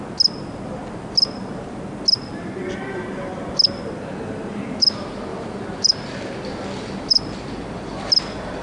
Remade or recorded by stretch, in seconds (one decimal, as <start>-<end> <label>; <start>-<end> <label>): 0.0-8.6 recorded